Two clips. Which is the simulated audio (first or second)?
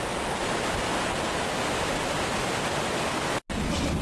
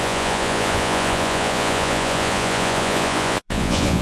second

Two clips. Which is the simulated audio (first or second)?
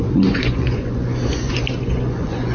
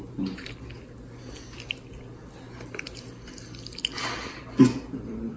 first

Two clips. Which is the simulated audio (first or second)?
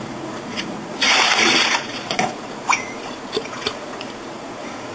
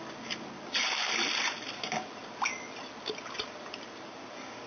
first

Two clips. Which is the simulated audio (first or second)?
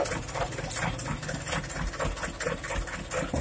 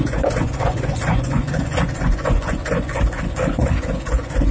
second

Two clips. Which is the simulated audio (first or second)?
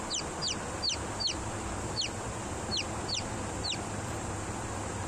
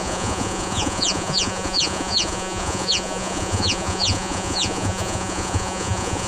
second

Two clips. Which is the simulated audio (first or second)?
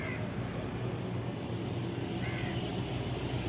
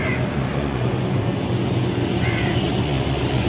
second